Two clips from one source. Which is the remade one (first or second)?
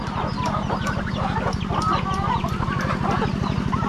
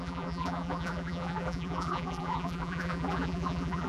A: second